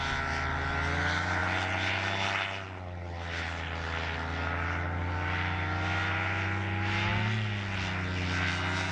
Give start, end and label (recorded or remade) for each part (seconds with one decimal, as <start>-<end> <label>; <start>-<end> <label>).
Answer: 0.0-8.9 recorded